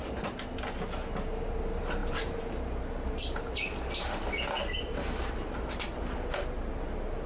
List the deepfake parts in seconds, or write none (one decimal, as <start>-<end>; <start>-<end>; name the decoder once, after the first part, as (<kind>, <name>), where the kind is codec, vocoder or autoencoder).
2.0-2.5 (vocoder, BigVGAN v2); 4.6-6.0